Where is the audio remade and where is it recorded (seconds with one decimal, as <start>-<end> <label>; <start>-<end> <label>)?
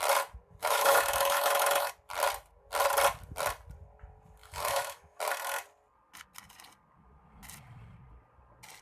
0.0-0.6 recorded; 0.6-1.9 remade; 1.9-4.4 recorded; 4.4-5.2 remade; 5.2-8.8 recorded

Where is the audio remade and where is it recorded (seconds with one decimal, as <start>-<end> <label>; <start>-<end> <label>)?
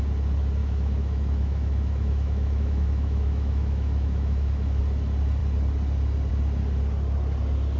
0.0-0.6 recorded; 0.6-4.8 remade; 4.8-7.8 recorded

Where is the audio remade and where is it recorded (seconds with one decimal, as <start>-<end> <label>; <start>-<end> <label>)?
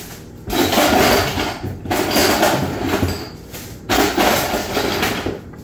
0.0-5.6 recorded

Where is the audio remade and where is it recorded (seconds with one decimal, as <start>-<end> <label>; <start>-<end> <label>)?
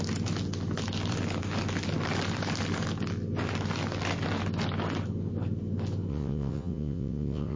0.0-6.1 recorded; 6.1-7.6 remade